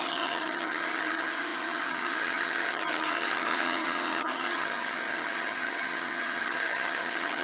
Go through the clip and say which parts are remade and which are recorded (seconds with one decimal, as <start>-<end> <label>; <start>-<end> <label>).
0.0-7.4 remade